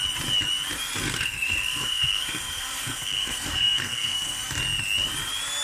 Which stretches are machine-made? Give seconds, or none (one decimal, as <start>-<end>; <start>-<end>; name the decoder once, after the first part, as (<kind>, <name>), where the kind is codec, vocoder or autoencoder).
1.0-4.4 (codec, SNAC)